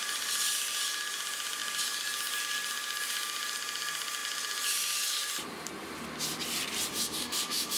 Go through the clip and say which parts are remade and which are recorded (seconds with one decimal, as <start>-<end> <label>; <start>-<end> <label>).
0.0-6.9 recorded; 6.9-7.8 remade